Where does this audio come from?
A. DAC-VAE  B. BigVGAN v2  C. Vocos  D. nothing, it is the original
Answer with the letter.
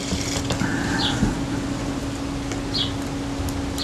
D